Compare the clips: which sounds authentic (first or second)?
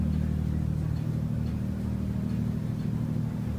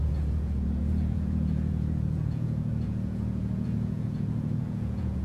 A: first